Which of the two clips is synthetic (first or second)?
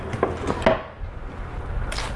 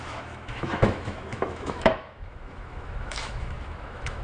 second